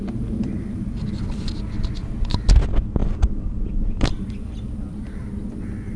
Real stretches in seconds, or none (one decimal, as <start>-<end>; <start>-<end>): 1.4-3.0; 5.2-6.0